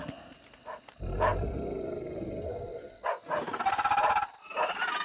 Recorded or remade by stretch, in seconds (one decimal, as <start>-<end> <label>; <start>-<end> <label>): 0.0-5.0 recorded